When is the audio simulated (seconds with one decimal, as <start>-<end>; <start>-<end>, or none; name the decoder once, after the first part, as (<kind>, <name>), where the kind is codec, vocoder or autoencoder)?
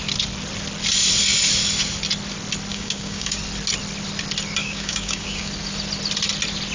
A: 2.7-3.4 (codec, DAC); 4.6-5.5